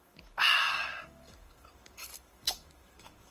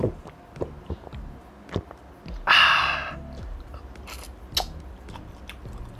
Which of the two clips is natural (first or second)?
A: second